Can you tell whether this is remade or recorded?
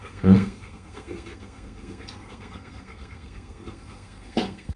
remade